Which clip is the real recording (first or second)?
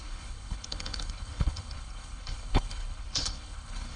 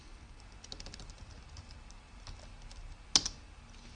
second